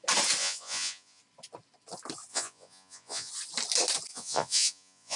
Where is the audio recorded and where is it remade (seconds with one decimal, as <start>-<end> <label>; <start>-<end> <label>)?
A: 0.0-0.4 recorded; 0.4-1.2 remade; 1.2-2.3 recorded; 2.3-3.3 remade; 3.3-4.1 recorded; 4.1-5.2 remade